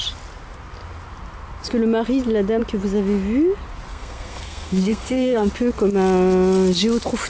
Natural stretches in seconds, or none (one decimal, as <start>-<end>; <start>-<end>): 0.0-3.9; 5.5-7.3